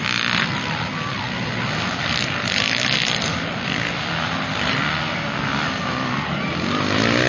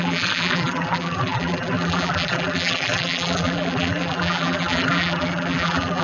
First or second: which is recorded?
first